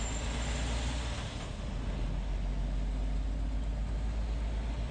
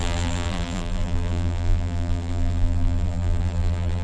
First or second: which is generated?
second